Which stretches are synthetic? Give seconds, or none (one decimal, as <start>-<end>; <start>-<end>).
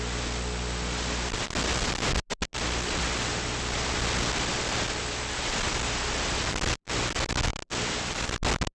none